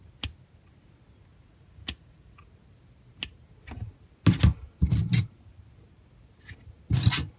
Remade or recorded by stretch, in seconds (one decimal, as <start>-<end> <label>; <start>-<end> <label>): 0.0-1.3 recorded; 1.3-2.4 remade; 2.4-7.4 recorded